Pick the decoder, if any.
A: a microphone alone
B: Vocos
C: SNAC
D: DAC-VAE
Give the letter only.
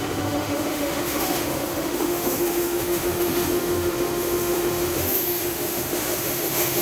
D